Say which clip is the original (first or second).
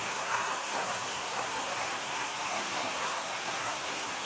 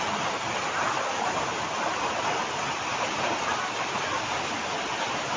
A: second